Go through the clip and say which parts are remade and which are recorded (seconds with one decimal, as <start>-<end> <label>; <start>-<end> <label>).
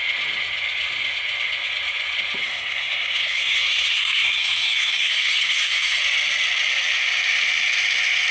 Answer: 0.0-2.4 recorded; 2.4-6.0 remade; 6.0-8.3 recorded